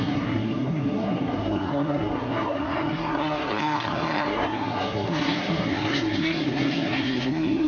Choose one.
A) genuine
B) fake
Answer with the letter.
B